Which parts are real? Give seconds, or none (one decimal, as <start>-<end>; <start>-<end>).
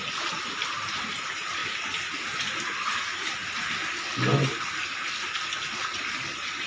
0.0-6.7